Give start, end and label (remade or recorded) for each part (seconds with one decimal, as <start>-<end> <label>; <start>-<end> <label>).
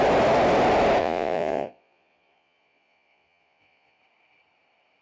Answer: 0.0-1.0 recorded; 1.0-4.0 remade; 4.0-5.0 recorded